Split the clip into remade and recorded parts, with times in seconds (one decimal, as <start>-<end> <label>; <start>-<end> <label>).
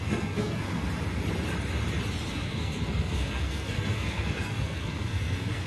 0.0-0.8 remade; 0.8-2.3 recorded; 2.3-5.7 remade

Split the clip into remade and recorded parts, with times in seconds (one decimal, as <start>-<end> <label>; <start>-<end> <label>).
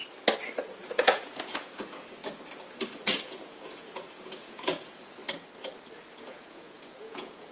0.0-0.9 recorded; 0.9-2.2 remade; 2.2-2.9 recorded; 2.9-5.2 remade; 5.2-6.1 recorded; 6.1-7.5 remade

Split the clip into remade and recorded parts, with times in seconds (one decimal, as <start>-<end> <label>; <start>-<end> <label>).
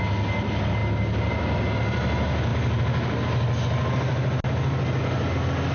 0.0-5.7 recorded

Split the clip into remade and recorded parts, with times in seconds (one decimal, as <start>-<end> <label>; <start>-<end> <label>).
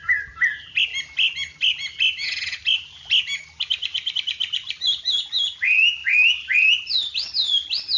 0.0-8.0 recorded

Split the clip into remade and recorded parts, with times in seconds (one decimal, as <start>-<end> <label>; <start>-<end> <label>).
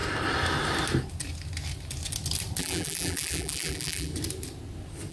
0.0-2.6 recorded; 2.6-4.1 remade; 4.1-5.1 recorded